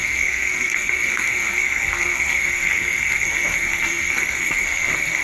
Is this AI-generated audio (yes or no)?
yes